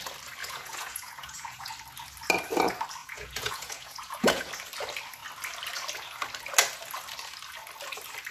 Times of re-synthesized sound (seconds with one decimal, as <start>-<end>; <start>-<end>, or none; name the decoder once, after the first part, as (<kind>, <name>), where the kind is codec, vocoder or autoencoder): 0.4-1.7 (vocoder, Vocos); 3.0-4.5